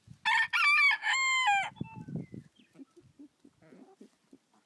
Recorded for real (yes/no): yes